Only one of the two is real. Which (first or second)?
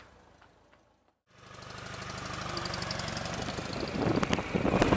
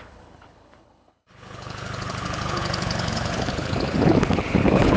first